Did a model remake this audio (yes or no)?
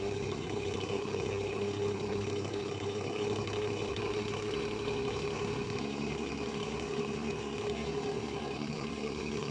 yes